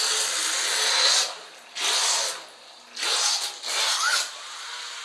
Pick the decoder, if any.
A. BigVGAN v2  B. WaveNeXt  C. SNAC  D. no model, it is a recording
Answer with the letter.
D